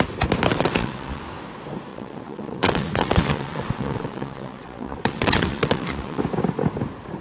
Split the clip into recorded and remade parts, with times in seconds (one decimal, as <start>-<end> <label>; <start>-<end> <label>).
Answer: 0.0-0.5 recorded; 0.5-1.2 remade; 1.2-1.9 recorded; 1.9-6.2 remade; 6.2-7.2 recorded